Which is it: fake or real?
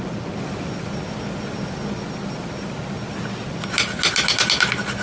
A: real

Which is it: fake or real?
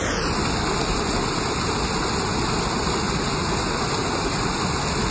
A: real